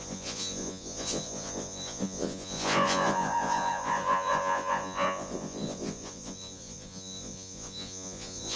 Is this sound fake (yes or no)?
yes